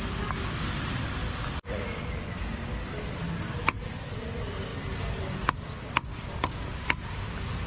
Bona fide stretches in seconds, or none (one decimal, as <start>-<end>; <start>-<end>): 0.0-6.1; 6.7-7.7